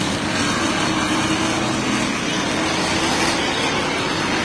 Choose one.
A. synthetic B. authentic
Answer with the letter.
B